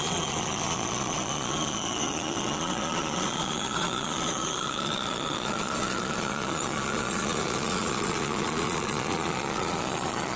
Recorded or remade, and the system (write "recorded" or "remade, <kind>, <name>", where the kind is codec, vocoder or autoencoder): remade, vocoder, Vocos